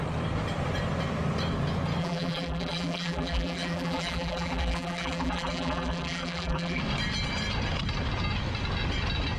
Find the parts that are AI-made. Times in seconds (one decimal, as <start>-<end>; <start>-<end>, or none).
2.0-6.8